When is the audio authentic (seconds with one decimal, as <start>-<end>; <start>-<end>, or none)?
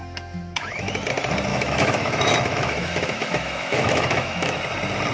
0.9-1.5; 4.6-5.1